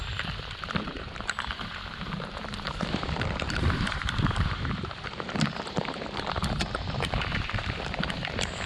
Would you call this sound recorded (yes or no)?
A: no